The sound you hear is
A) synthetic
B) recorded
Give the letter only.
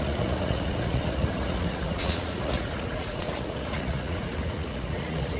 A